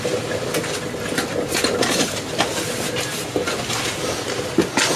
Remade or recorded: recorded